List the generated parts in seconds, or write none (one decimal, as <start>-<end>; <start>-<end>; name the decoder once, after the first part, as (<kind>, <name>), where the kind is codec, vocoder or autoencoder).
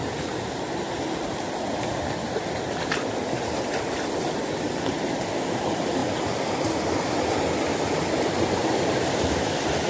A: none